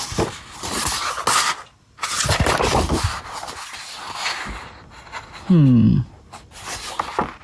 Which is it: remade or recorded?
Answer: recorded